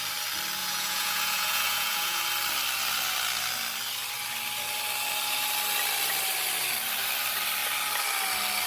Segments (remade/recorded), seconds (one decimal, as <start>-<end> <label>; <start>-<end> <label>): 0.0-0.6 recorded; 0.6-2.2 remade; 2.2-8.7 recorded